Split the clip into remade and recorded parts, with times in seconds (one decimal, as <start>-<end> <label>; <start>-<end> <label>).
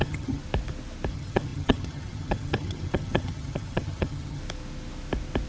0.0-0.4 remade; 0.4-1.1 recorded; 1.1-4.4 remade; 4.4-5.5 recorded